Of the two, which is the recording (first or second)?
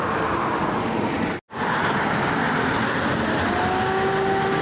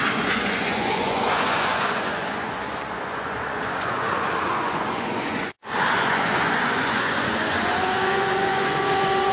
first